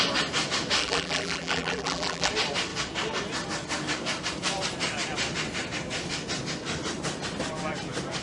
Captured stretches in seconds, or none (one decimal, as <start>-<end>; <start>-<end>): 0.0-0.8; 2.3-8.2